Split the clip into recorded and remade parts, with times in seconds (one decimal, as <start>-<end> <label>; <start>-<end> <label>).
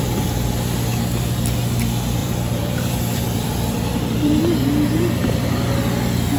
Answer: 0.0-2.2 recorded; 2.2-4.4 remade; 4.4-6.4 recorded